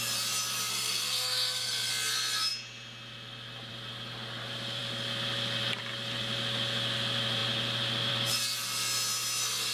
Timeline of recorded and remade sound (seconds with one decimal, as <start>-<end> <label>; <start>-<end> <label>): 0.0-0.7 recorded; 0.7-1.9 remade; 1.9-9.7 recorded